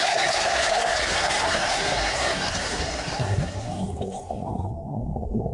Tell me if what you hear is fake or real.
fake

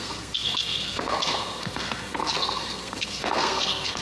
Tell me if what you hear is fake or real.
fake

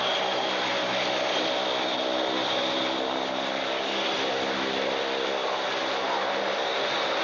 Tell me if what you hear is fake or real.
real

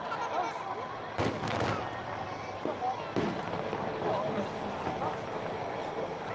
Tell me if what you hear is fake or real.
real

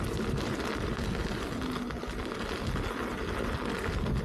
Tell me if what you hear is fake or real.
real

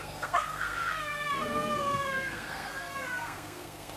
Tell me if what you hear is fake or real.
fake